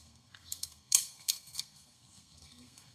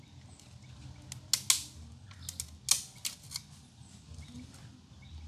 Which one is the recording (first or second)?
second